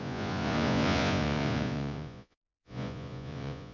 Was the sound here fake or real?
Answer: fake